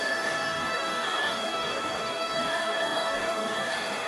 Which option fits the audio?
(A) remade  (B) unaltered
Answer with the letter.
A